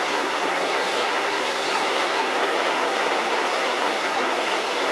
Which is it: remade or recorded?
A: remade